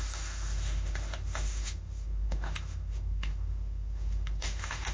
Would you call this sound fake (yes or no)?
yes